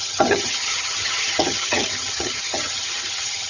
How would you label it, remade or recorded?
remade